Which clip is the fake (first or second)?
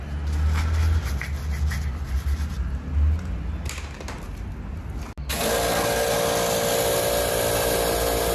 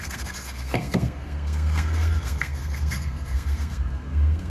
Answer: second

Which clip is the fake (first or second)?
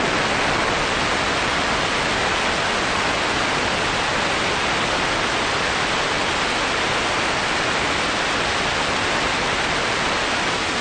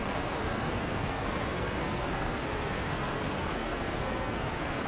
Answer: second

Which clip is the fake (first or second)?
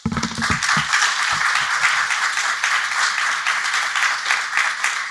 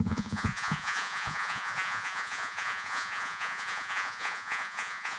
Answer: second